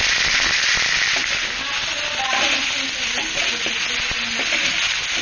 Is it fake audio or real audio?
real